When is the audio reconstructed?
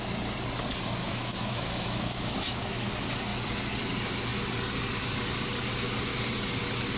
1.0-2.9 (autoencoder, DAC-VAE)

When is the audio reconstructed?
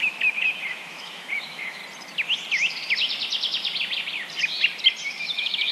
0.0-1.8 (autoencoder, DAC-VAE); 5.2-5.7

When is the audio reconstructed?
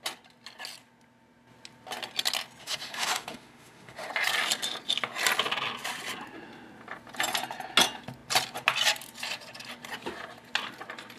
2.6-4.1 (autoencoder, DAC-VAE)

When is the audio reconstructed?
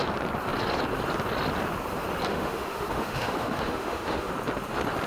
2.3-4.3 (autoencoder, DAC-VAE)